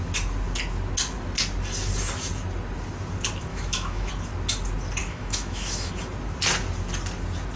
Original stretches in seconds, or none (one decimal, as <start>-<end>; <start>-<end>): 0.0-3.5; 4.1-5.0; 5.9-7.6